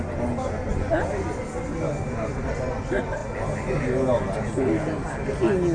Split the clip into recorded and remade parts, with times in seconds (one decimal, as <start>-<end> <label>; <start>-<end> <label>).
0.0-5.7 recorded